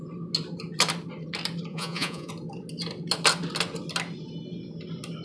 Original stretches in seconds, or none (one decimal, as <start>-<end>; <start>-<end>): 0.0-1.7; 2.3-5.2